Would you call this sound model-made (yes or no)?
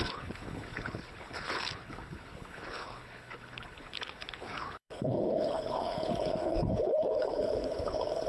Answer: yes